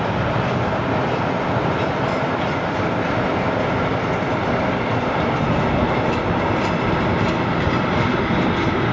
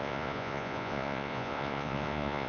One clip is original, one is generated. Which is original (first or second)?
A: first